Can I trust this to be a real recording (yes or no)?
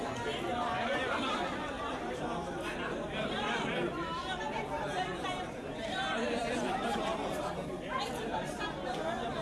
no